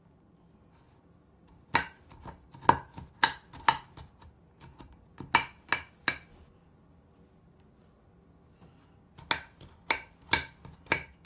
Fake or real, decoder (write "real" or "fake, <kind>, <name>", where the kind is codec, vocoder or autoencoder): real